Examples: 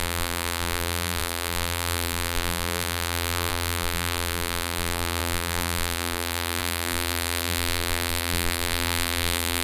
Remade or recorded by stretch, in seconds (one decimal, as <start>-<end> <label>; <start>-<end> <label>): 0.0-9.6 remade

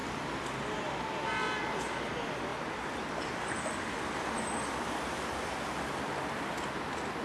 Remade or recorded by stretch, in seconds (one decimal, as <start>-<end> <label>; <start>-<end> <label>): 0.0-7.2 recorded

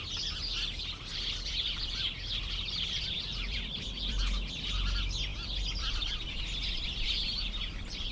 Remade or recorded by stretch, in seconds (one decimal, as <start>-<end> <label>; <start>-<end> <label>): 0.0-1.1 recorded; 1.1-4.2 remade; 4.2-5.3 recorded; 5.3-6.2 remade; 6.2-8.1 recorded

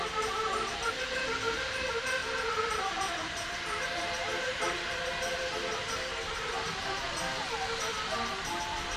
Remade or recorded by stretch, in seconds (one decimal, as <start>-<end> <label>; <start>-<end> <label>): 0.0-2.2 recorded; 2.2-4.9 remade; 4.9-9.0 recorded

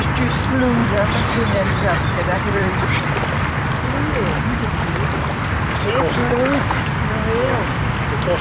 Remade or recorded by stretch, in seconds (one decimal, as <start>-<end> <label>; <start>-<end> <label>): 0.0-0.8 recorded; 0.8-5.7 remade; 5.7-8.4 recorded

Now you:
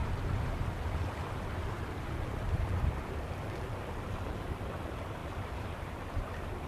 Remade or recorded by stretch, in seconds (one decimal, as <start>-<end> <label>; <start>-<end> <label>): 0.0-6.7 remade

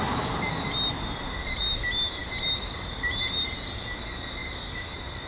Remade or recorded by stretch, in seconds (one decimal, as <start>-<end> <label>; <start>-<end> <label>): 0.0-2.2 recorded; 2.2-3.7 remade; 3.7-4.4 recorded; 4.4-5.3 remade

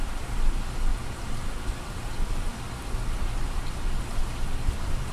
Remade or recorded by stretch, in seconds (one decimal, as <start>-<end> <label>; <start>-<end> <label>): 0.0-5.1 remade